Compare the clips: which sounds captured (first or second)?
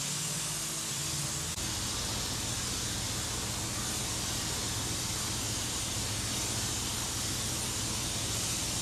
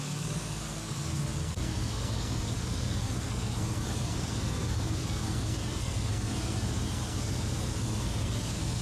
first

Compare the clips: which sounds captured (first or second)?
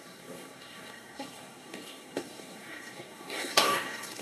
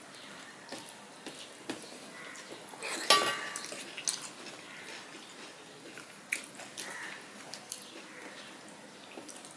second